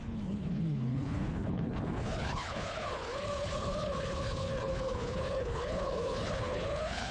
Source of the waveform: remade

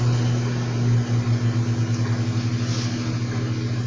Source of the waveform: recorded